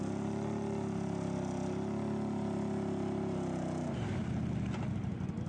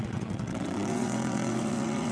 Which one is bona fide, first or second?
first